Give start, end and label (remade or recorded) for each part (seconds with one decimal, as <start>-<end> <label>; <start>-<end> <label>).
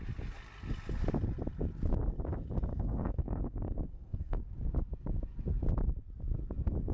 0.0-2.7 recorded; 2.7-4.4 remade; 4.4-6.9 recorded